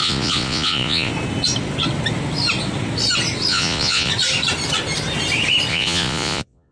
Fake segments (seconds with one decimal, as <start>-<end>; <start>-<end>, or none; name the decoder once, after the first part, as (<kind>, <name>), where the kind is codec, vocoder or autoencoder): 0.0-1.1 (vocoder, Vocos); 3.5-4.1; 5.7-6.7